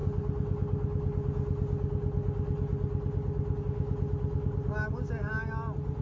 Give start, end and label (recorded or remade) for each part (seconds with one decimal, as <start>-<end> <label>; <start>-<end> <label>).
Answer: 0.0-6.0 recorded